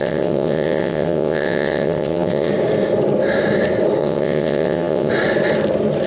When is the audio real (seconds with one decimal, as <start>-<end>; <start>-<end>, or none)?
2.5-4.0; 5.1-6.1